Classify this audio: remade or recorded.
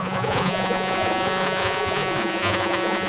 remade